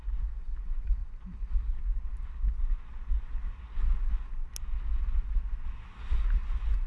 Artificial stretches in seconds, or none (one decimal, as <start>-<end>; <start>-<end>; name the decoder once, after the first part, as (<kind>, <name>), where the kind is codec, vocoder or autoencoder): none